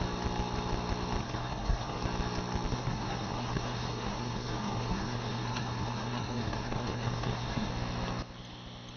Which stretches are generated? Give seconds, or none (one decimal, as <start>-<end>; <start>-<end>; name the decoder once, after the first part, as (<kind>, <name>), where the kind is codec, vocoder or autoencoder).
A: 1.2-2.0 (codec, SNAC); 2.7-7.7

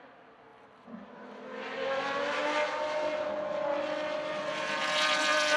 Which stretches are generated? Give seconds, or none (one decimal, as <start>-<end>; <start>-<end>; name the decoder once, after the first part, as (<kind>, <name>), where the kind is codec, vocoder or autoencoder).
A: none

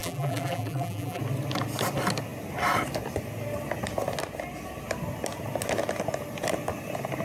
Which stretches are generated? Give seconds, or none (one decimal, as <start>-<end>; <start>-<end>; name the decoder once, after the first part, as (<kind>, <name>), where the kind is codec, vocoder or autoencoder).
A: 0.0-1.2 (vocoder, BigVGAN v2)

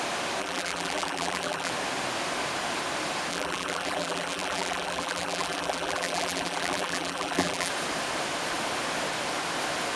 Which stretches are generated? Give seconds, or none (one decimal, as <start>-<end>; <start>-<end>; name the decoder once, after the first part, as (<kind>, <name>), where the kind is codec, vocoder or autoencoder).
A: 0.4-1.7 (vocoder, BigVGAN v2); 3.3-7.7

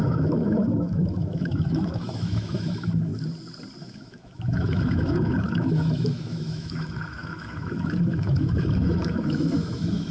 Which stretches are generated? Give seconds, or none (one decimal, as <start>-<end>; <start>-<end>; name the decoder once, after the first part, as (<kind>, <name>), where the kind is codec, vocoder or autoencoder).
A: 0.0-3.1 (autoencoder, DAC-VAE); 3.8-10.1

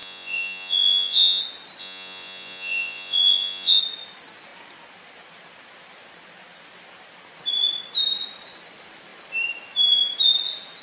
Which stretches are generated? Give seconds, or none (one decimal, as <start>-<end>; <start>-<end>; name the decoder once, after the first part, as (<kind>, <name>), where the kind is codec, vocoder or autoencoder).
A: 0.0-1.4 (vocoder, Vocos); 1.8-3.8